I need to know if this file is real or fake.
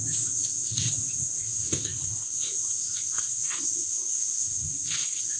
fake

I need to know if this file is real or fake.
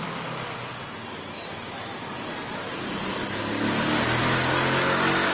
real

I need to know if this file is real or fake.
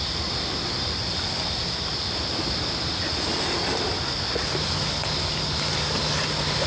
real